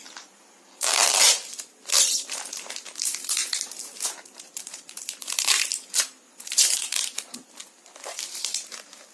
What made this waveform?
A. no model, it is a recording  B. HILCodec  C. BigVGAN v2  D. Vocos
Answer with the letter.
C